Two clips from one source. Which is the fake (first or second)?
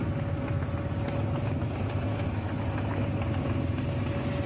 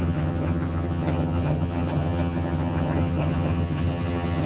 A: second